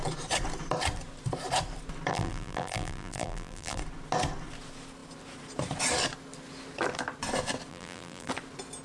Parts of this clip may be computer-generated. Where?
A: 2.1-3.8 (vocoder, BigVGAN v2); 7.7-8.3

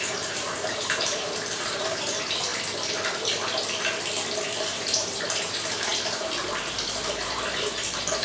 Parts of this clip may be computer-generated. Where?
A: 0.0-2.5 (vocoder, BigVGAN v2); 4.7-8.2

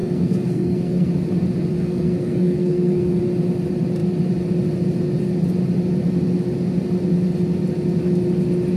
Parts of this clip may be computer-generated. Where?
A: 0.0-1.1 (codec, SNAC); 1.7-3.2